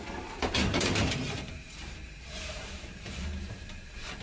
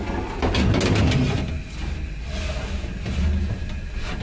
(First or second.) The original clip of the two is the second